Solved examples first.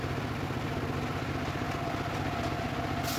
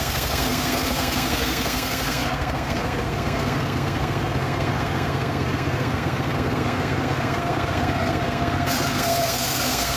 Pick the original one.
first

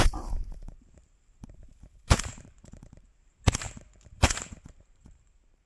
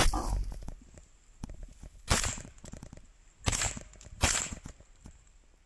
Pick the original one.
second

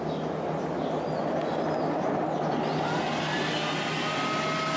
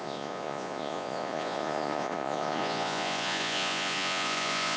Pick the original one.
first